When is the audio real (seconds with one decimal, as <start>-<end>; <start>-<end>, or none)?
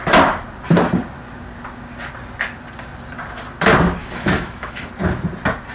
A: 0.0-4.0; 4.9-5.7